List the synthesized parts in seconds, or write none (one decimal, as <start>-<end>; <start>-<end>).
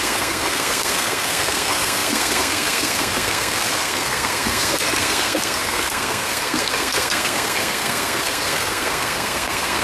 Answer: 0.0-9.8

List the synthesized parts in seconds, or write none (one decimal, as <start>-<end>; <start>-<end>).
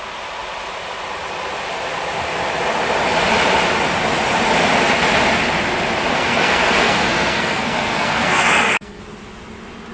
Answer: 6.1-9.0